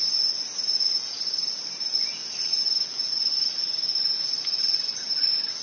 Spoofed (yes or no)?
no